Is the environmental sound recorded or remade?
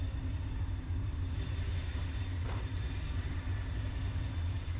remade